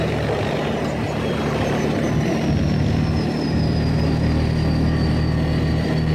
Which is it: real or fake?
real